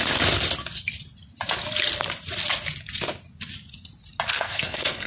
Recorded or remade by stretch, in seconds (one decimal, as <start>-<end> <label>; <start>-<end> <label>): 0.0-4.3 recorded; 4.3-5.1 remade